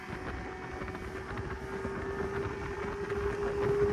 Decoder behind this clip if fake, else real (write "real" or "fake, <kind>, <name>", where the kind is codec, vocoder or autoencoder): real